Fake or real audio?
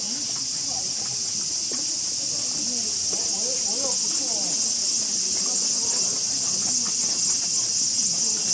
real